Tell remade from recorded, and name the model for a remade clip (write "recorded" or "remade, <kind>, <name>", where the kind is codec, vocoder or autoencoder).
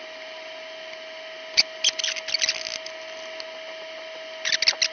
recorded